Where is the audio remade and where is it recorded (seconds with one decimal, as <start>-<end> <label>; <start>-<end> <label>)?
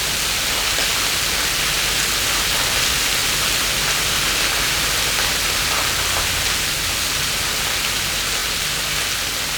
0.0-9.6 recorded